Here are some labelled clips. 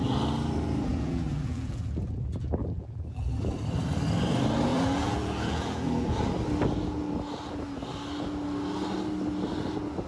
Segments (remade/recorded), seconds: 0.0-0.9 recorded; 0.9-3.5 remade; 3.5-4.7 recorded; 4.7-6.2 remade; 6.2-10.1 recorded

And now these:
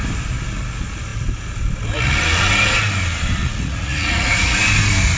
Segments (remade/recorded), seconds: 0.0-3.4 recorded; 3.4-4.6 remade; 4.6-5.2 recorded

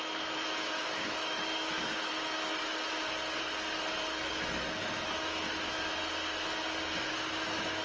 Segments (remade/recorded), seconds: 0.0-2.1 remade; 2.1-4.3 recorded; 4.3-6.0 remade; 6.0-7.1 recorded; 7.1-7.8 remade